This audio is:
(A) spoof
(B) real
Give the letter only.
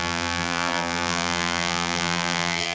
A